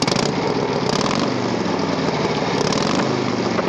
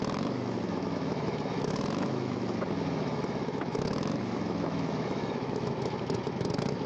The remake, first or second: second